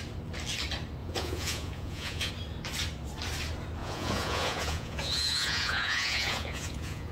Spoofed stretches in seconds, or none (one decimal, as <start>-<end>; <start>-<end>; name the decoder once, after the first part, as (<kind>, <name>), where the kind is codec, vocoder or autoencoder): 1.0-2.3 (vocoder, Vocos); 3.8-7.1